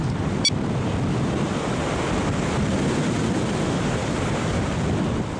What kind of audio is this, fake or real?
real